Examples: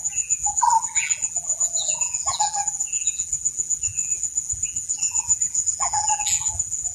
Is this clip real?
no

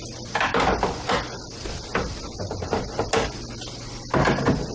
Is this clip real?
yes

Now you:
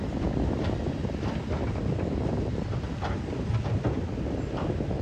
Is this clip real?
yes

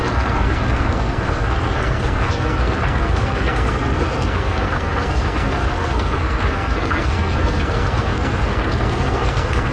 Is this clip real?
no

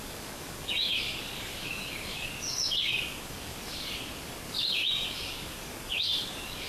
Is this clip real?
no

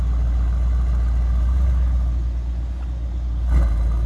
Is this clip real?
yes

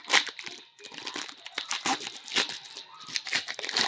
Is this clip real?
yes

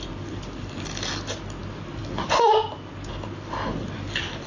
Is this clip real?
yes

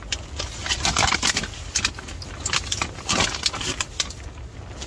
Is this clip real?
yes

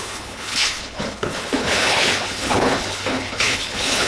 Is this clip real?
no